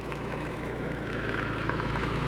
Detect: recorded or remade remade